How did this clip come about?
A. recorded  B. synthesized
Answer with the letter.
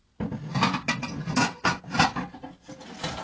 A